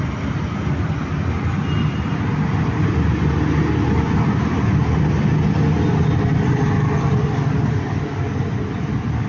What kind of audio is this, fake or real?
real